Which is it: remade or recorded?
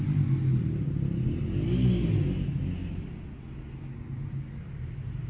recorded